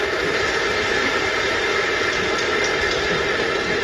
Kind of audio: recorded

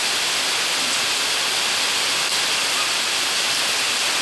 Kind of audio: recorded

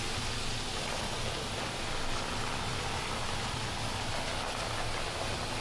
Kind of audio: recorded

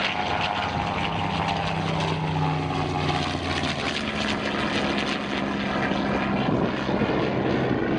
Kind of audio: recorded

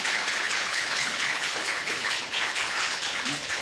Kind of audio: remade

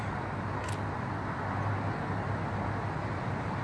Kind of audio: recorded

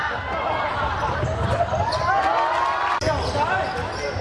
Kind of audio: recorded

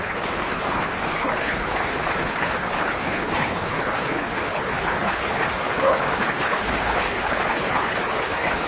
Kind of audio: remade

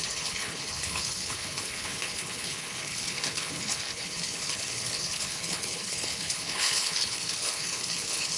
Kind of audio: remade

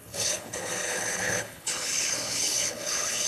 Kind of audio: remade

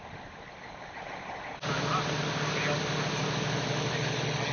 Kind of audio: recorded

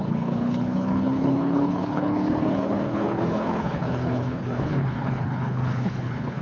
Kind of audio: remade